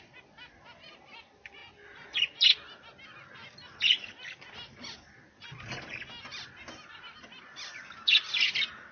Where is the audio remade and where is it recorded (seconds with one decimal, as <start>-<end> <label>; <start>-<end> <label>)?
0.0-8.9 recorded